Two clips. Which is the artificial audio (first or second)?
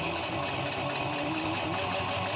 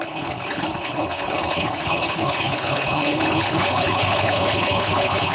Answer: second